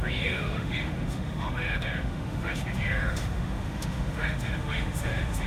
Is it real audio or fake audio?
fake